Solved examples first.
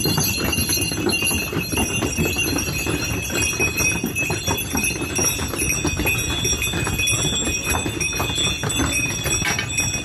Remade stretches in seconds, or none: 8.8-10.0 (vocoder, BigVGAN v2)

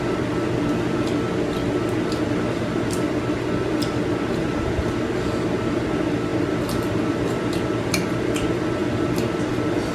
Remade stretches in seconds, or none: 4.4-5.0 (vocoder, BigVGAN v2)

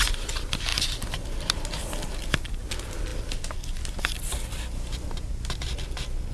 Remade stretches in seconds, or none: none

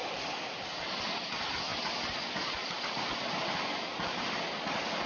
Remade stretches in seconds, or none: none

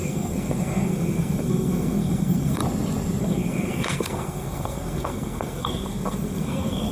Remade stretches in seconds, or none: 0.0-2.6 (codec, SNAC); 3.2-6.9

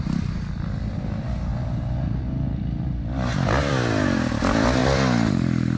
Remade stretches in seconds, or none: none